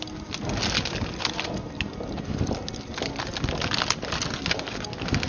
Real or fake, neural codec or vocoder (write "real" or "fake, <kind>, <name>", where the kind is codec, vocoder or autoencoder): real